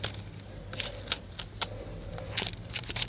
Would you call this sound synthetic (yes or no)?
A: no